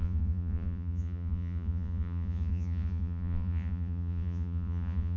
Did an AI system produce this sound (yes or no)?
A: yes